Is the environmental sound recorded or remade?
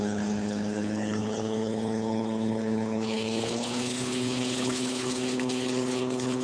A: remade